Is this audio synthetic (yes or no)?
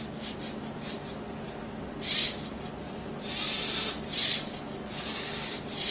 no